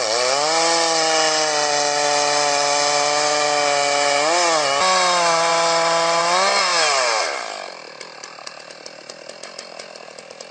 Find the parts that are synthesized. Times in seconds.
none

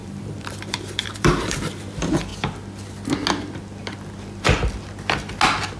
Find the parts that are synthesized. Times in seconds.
0.0-1.7